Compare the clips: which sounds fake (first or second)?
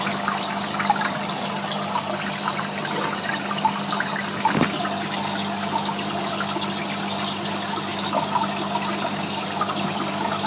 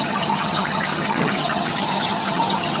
second